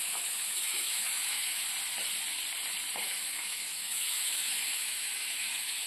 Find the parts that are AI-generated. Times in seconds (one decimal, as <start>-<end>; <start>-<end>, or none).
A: 0.0-1.7; 3.0-5.9